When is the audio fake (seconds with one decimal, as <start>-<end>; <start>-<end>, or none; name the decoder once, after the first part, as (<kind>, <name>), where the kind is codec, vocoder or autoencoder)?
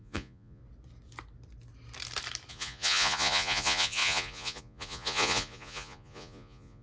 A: 0.0-0.6 (vocoder, Vocos); 2.5-6.8